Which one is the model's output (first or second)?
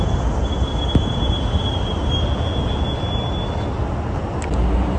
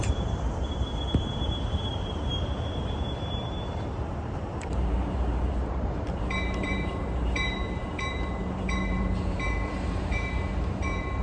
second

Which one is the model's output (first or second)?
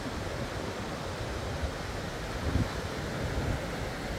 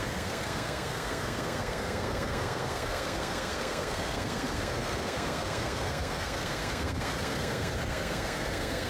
second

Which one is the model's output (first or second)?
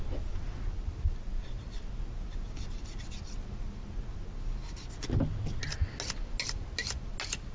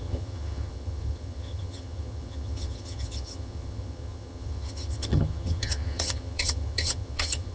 second